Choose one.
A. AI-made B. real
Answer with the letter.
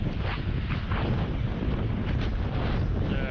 B